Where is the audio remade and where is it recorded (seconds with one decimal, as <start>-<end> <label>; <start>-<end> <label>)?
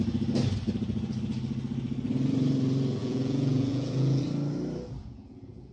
0.0-3.0 recorded; 3.0-4.2 remade; 4.2-5.0 recorded; 5.0-5.7 remade